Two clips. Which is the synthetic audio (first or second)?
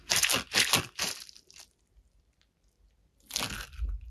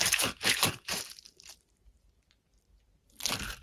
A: second